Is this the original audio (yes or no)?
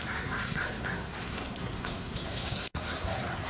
no